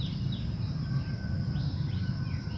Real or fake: real